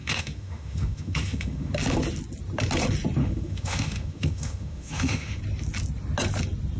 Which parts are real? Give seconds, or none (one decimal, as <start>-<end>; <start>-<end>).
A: 1.7-3.2; 5.4-6.8